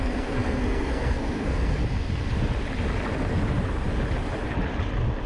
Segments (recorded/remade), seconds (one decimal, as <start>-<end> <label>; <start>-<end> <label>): 0.0-1.8 remade; 1.8-5.3 recorded

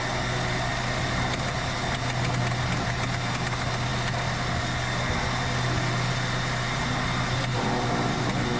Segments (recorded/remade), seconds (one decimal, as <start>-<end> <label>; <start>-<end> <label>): 0.0-8.6 recorded